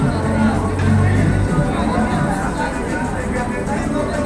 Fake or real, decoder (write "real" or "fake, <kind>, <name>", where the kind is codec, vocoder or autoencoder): real